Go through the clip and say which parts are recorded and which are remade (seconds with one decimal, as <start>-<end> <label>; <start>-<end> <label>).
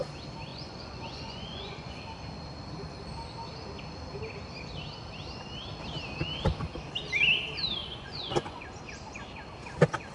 0.0-0.5 recorded; 0.5-2.0 remade; 2.0-7.8 recorded; 7.8-8.6 remade; 8.6-10.1 recorded